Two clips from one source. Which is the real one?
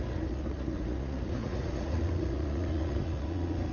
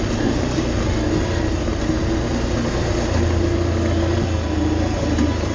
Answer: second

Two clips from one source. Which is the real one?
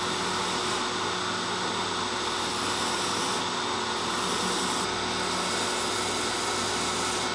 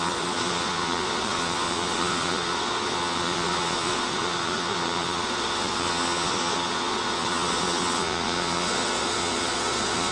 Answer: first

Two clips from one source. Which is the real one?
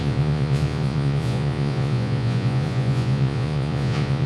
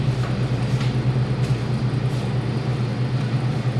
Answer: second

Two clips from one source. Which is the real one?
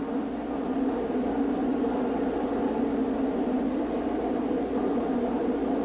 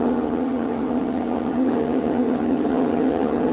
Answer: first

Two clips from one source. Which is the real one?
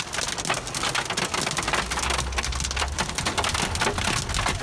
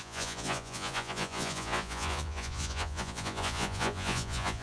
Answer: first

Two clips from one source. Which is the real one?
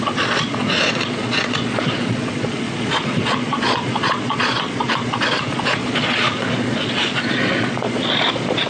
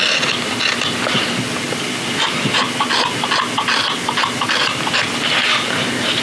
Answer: second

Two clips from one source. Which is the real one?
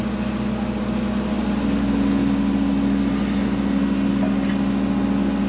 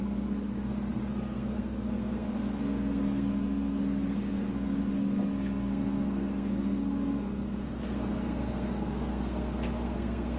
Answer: first